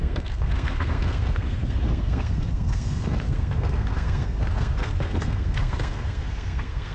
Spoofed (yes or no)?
yes